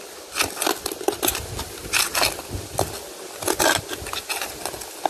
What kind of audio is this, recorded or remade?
recorded